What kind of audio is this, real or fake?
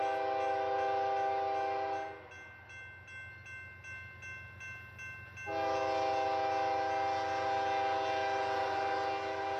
real